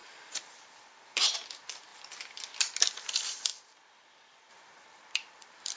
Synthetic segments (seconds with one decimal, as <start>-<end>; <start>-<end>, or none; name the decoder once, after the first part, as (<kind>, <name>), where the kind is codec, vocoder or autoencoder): 0.0-1.9 (vocoder, BigVGAN v2); 2.8-5.8